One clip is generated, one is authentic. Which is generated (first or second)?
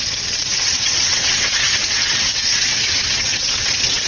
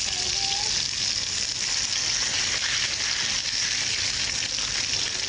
first